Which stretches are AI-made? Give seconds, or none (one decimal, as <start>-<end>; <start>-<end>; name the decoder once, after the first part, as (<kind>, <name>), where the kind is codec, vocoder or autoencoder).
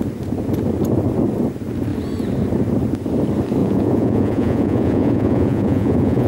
3.6-6.3 (vocoder, Vocos)